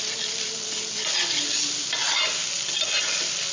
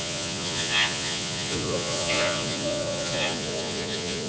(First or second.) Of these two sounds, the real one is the first